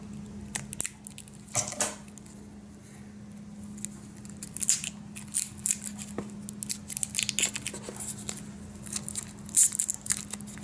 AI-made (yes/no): no